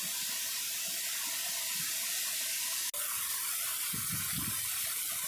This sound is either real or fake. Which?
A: real